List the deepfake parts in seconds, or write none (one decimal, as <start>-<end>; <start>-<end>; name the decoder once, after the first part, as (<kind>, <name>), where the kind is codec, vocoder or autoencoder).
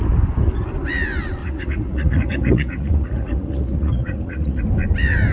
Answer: 1.4-4.6 (vocoder, Vocos)